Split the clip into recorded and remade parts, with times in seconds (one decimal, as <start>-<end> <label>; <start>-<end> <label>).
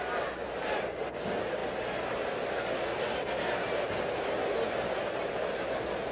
0.0-6.1 recorded